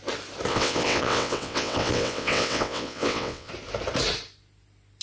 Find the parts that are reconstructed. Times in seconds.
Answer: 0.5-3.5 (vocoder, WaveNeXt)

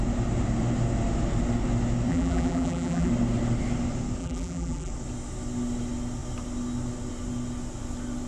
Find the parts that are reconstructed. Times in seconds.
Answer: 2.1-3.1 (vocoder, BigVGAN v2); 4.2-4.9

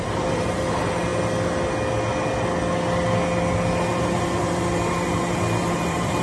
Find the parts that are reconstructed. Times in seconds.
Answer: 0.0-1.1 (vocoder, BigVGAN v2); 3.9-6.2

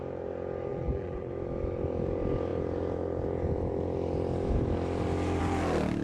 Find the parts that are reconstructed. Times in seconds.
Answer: 0.7-1.3 (vocoder, BigVGAN v2)

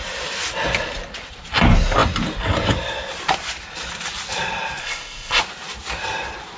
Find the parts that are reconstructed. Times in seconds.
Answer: 4.8-5.4 (codec, ZipCodec)

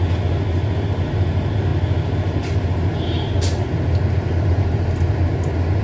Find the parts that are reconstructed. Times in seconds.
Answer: none

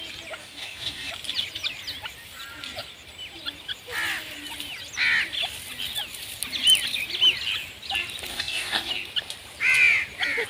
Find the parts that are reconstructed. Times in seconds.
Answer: 0.4-1.1 (codec, DAC); 8.3-8.9

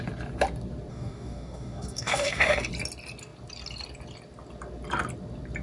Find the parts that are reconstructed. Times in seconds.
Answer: 0.9-2.7 (codec, DAC)